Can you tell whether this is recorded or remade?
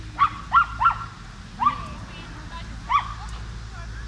recorded